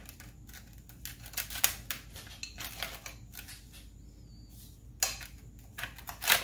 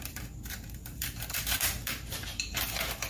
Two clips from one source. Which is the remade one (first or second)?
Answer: second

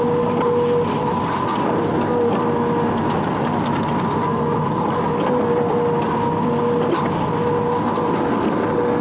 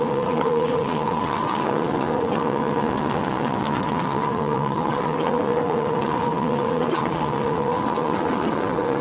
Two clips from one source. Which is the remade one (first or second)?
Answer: second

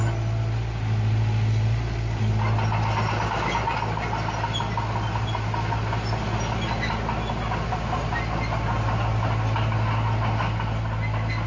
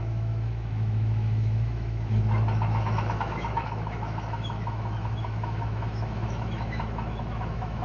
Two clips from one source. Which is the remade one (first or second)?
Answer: second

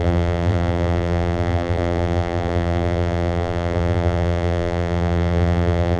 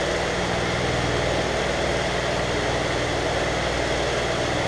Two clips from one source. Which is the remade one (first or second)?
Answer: first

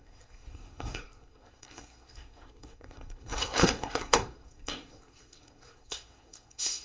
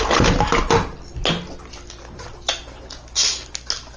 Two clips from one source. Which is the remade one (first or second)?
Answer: first